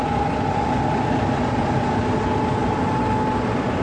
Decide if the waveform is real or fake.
real